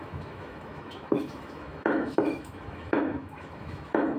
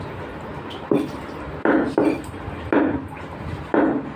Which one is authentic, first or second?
second